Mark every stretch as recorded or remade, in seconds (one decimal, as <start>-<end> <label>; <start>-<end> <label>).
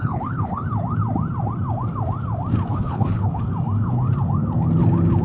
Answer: 0.0-0.6 remade; 0.6-2.7 recorded; 2.7-3.3 remade; 3.3-5.2 recorded